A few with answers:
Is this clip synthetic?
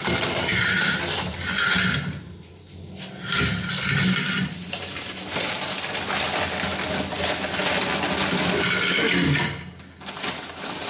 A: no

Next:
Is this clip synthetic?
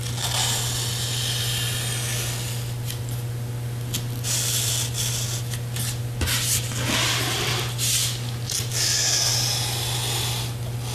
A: no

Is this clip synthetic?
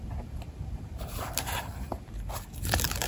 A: yes